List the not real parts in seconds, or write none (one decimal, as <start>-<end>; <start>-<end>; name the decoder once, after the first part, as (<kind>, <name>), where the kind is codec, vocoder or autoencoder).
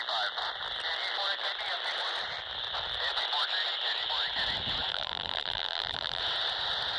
4.9-6.2 (vocoder, BigVGAN v2)